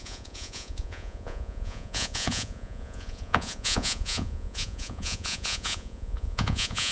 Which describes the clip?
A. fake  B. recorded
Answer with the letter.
A